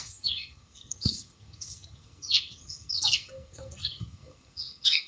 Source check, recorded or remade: remade